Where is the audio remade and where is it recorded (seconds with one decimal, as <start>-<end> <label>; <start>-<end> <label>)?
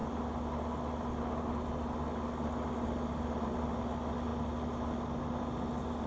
0.0-6.1 recorded